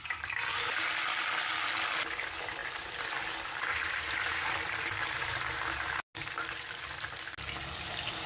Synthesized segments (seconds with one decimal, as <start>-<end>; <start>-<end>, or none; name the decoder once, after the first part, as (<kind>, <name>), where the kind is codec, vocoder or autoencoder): 2.6-5.2 (vocoder, BigVGAN v2)